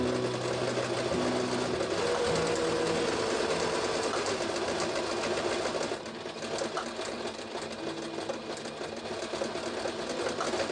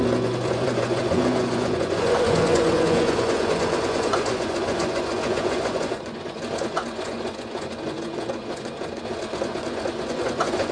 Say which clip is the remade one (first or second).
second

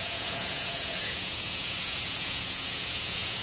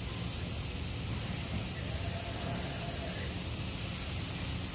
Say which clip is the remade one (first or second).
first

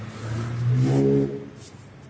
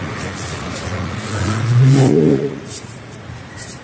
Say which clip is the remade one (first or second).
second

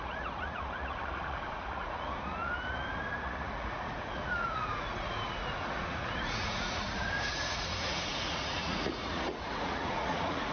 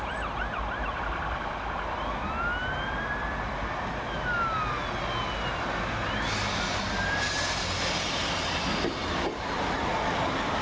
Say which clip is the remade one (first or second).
first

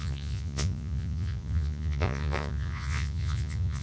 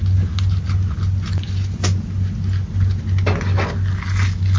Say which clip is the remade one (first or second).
first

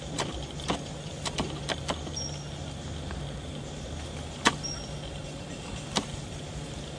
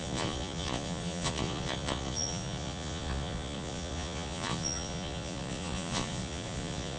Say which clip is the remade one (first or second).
second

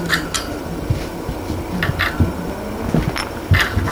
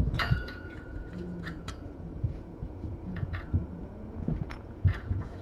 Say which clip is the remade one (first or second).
second